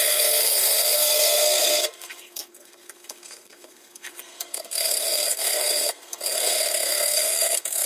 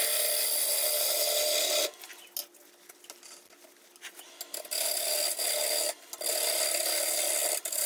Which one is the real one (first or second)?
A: second